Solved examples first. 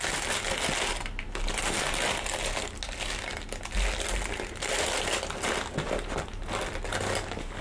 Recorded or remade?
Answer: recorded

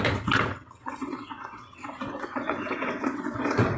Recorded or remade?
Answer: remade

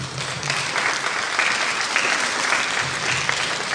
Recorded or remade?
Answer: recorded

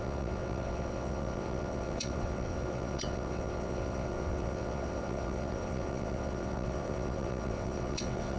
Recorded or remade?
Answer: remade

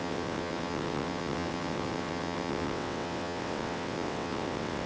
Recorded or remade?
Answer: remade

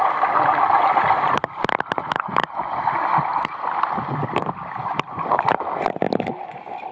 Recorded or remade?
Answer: recorded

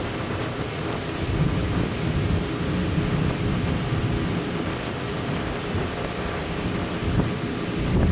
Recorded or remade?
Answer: recorded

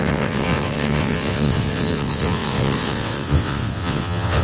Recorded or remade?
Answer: remade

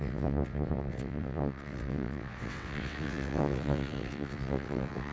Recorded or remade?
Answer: remade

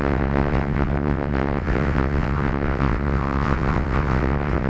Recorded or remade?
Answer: remade